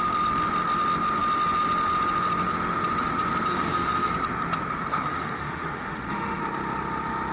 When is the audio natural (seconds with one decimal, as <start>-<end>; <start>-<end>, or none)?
0.0-3.5; 4.1-4.9; 6.4-7.3